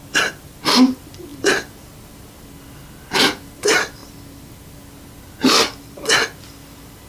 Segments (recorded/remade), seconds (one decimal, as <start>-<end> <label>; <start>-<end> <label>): 0.0-7.1 recorded